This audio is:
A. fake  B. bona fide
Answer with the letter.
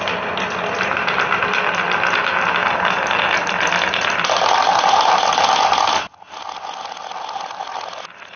B